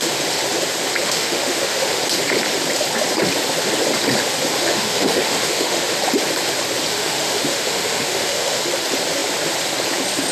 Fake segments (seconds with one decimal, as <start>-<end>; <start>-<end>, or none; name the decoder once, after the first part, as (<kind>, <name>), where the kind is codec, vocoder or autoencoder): 1.0-2.0 (autoencoder, DAC-VAE); 4.6-5.9; 6.9-8.6